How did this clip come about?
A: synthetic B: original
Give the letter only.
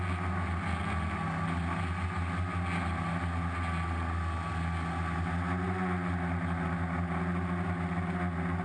B